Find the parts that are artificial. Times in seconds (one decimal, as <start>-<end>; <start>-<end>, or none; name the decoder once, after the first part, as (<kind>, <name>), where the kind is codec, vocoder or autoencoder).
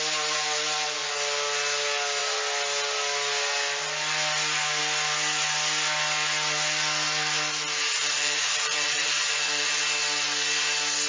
7.9-9.7 (vocoder, Vocos)